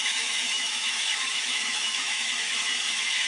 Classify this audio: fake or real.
fake